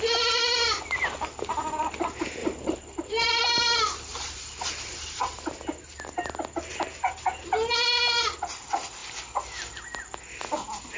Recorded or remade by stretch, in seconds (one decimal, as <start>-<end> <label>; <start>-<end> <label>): 0.0-2.4 recorded; 2.4-3.5 remade; 3.5-4.1 recorded; 4.1-5.5 remade; 5.5-11.0 recorded